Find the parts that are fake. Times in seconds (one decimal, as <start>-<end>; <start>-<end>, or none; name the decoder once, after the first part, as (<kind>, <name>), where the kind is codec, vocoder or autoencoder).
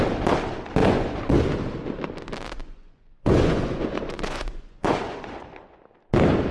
0.8-1.4 (vocoder, Vocos); 2.6-5.8